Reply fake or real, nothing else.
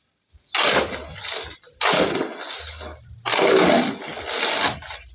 real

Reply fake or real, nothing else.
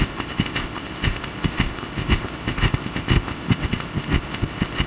fake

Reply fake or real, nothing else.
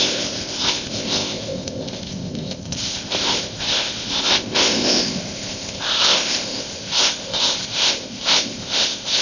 fake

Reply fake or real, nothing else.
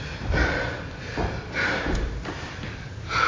real